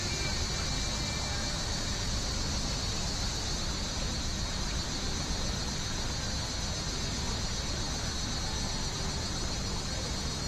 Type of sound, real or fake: real